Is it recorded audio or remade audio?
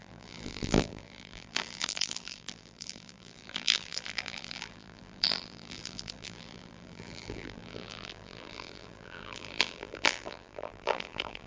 remade